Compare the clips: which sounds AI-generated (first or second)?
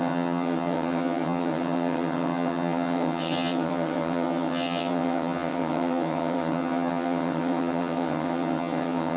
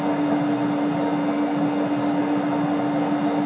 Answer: first